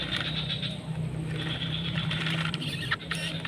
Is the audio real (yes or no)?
no